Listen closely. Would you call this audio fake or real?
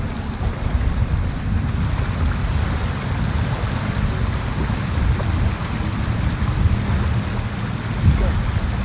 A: real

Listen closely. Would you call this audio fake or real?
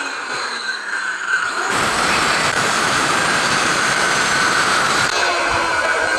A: fake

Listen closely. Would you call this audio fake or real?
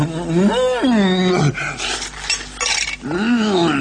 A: real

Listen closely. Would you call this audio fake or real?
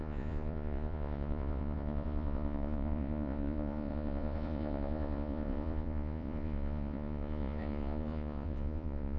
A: fake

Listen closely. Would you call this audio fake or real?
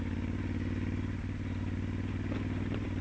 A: real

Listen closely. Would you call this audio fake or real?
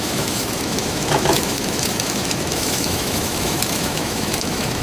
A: fake